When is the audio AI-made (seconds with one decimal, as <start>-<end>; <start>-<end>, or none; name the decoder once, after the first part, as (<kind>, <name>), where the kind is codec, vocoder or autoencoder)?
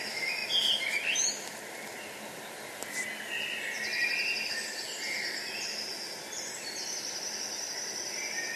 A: none